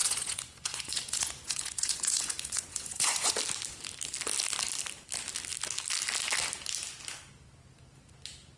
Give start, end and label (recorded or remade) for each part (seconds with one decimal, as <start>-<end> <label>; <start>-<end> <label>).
0.0-3.3 remade; 3.3-8.6 recorded

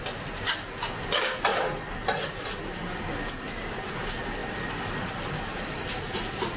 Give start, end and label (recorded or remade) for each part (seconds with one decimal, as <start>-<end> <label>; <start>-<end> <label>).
0.0-6.6 recorded

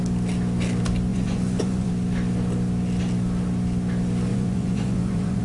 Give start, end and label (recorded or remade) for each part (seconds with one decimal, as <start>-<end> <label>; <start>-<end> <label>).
0.0-1.1 recorded; 1.1-1.9 remade; 1.9-4.3 recorded; 4.3-5.4 remade

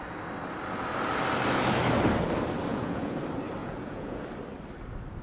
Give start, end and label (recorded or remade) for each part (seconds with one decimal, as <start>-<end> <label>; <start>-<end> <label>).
0.0-2.7 recorded; 2.7-3.2 remade; 3.2-3.6 recorded; 3.6-4.2 remade; 4.2-5.2 recorded

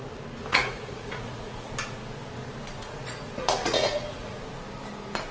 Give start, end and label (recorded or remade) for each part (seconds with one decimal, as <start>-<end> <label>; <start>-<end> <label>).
0.0-0.5 recorded; 0.5-1.7 remade; 1.7-2.8 recorded; 2.8-4.4 remade; 4.4-5.3 recorded

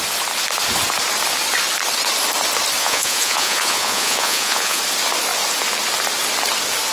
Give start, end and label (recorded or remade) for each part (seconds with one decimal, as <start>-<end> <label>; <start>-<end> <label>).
0.0-2.8 recorded; 2.8-4.8 remade; 4.8-6.9 recorded

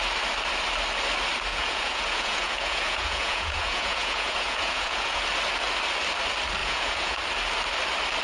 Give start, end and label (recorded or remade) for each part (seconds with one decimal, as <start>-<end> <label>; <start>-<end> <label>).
0.0-1.5 recorded; 1.5-5.2 remade; 5.2-6.6 recorded; 6.6-7.2 remade; 7.2-8.2 recorded